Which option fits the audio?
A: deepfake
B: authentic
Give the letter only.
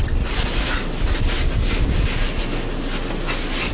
B